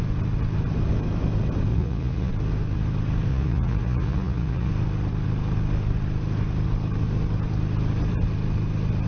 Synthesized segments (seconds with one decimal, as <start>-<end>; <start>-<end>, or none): 1.7-2.3; 3.3-4.7